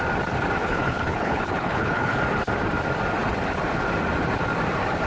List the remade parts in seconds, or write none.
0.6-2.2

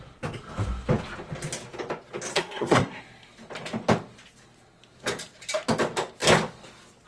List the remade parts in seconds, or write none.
2.3-3.0

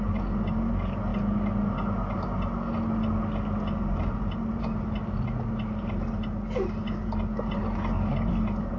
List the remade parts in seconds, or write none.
none

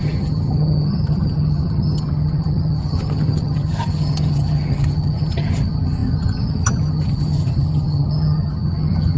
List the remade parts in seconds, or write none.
0.0-9.2

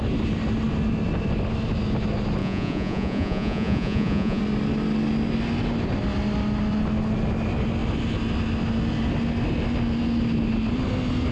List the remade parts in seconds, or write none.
2.4-4.4

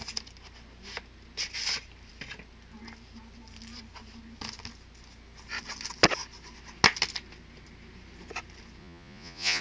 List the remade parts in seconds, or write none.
8.8-9.6